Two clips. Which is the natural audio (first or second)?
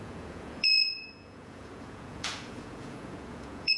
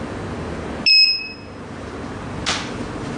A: second